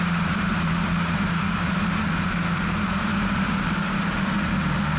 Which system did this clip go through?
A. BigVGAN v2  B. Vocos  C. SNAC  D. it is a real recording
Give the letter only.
A